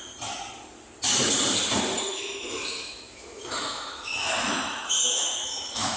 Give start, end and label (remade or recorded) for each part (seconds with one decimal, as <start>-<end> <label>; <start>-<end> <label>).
0.0-2.1 recorded; 2.1-6.0 remade